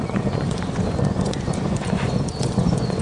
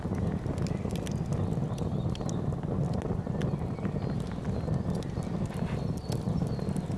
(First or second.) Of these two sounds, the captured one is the second